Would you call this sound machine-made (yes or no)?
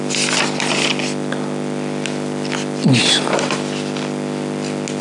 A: no